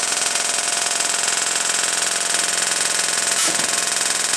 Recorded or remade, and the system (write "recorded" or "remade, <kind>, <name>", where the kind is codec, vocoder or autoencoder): remade, vocoder, Vocos